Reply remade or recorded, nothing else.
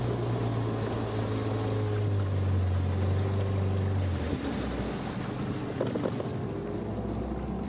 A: recorded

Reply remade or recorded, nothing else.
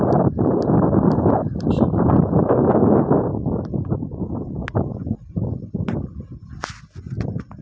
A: recorded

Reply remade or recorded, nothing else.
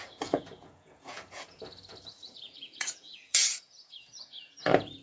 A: remade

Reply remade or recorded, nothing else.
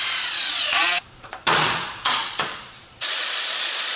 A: remade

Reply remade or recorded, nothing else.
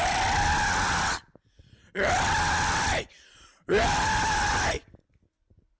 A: recorded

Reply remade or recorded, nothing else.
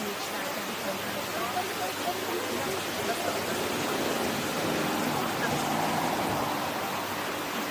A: recorded